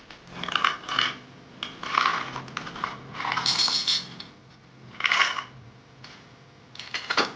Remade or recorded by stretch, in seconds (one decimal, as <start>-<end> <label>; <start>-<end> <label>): 0.0-7.4 recorded